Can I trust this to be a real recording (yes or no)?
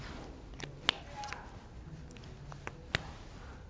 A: yes